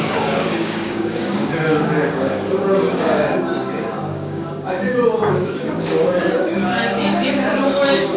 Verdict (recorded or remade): remade